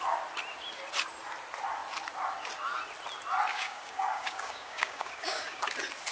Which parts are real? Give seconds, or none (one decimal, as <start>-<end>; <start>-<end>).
0.0-3.5; 5.6-6.1